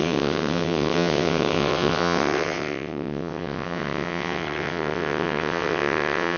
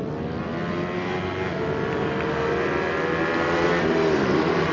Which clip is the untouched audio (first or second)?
second